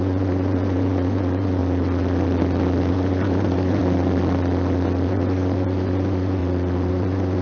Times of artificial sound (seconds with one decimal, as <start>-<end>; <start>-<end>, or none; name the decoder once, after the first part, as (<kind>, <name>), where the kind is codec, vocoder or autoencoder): 0.0-1.6 (vocoder, Vocos); 2.9-3.8; 5.1-6.4; 6.9-7.4